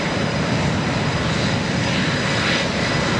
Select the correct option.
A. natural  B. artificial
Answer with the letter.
A